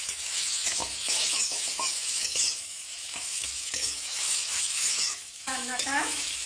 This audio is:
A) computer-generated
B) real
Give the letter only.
A